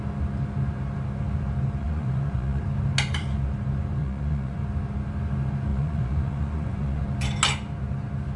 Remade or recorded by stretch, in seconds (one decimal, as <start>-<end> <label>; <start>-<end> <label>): 0.0-1.8 recorded; 1.8-2.6 remade; 2.6-4.0 recorded; 4.0-4.6 remade; 4.6-5.7 recorded; 5.7-7.0 remade; 7.0-8.4 recorded